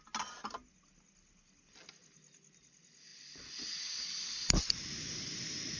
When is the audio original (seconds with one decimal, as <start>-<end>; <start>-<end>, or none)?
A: 0.0-5.8